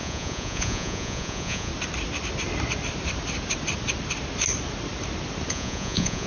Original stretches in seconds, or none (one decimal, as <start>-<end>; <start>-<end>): 1.7-5.5